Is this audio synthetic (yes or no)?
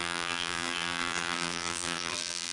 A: yes